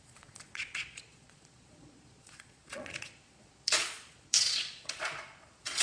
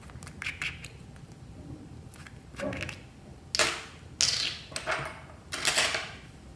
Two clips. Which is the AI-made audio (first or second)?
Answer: first